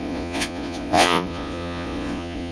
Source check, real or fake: fake